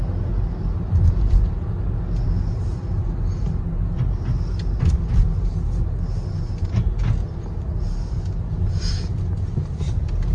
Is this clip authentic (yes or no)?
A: yes